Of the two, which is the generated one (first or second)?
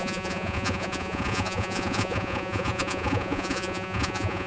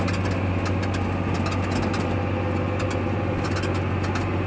first